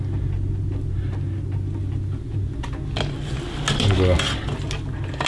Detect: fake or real real